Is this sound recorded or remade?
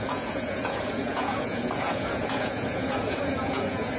remade